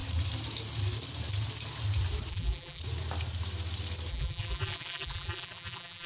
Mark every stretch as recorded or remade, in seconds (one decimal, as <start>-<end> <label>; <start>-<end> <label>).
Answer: 0.0-2.3 recorded; 2.3-2.8 remade; 2.8-4.1 recorded; 4.1-6.1 remade